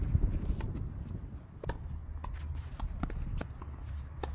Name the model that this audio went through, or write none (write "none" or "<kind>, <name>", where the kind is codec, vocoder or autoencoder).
none